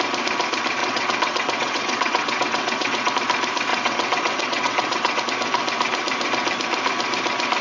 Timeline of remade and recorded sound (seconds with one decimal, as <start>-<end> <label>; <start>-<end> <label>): 0.0-0.8 recorded; 0.8-3.1 remade; 3.1-3.7 recorded; 3.7-5.2 remade; 5.2-7.6 recorded